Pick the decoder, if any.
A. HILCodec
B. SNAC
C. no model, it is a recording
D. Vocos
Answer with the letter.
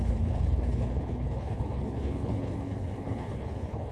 A